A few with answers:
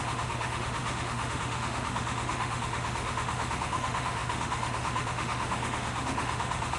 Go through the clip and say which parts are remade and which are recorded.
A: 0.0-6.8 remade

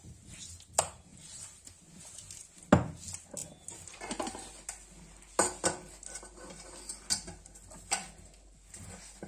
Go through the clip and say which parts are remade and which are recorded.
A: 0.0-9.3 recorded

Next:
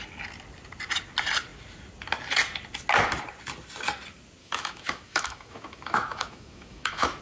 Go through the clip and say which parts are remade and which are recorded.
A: 0.0-4.4 recorded; 4.4-7.2 remade

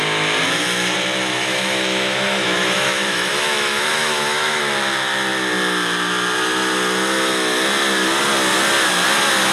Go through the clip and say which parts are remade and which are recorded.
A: 0.0-1.3 recorded; 1.3-4.6 remade; 4.6-9.5 recorded

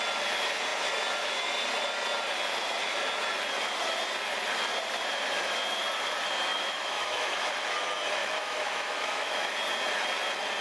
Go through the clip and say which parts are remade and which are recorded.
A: 0.0-6.5 recorded; 6.5-7.5 remade; 7.5-8.2 recorded; 8.2-9.5 remade; 9.5-10.6 recorded